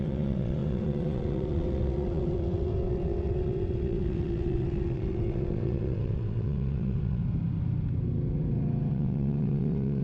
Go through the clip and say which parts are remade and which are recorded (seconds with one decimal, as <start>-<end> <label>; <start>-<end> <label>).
0.0-7.2 remade; 7.2-8.9 recorded; 8.9-10.0 remade